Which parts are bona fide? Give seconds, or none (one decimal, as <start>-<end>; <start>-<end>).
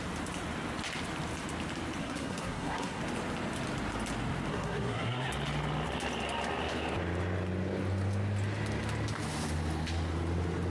0.0-2.0; 3.0-4.5; 5.3-10.7